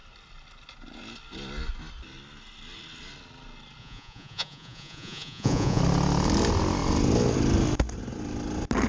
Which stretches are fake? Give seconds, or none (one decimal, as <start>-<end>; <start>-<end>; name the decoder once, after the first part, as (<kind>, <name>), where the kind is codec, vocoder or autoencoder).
3.8-5.8 (vocoder, Vocos)